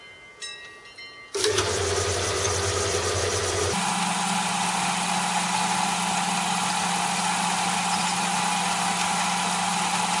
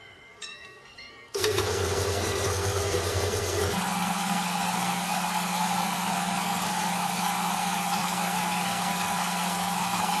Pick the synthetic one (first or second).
second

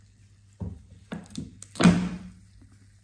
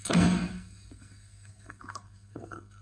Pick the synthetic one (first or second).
second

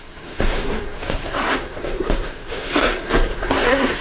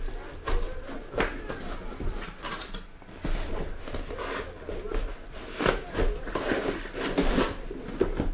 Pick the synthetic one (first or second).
first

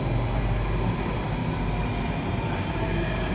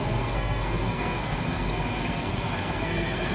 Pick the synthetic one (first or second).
second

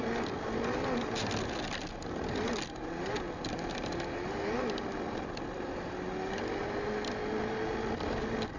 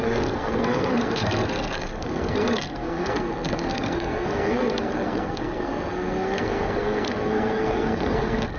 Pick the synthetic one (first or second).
second